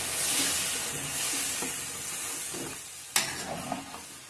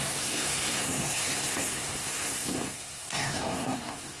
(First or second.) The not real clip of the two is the second